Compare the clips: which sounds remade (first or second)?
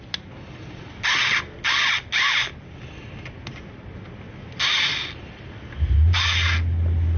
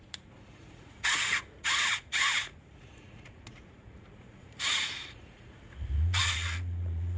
second